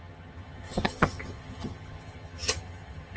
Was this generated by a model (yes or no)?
yes